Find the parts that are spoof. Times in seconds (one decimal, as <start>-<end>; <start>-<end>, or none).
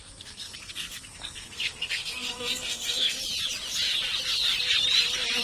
0.0-3.2